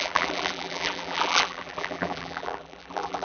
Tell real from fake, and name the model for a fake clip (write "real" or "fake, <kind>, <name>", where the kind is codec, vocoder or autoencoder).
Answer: fake, vocoder, BigVGAN v2